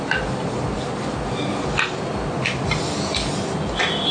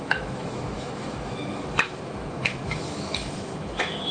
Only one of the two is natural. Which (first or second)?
first